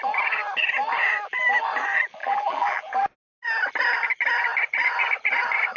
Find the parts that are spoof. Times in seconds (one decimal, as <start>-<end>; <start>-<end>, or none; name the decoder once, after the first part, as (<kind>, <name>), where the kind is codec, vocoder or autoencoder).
2.2-2.8 (vocoder, BigVGAN v2)